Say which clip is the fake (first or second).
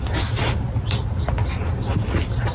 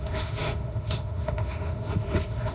second